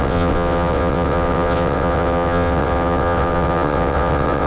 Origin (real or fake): fake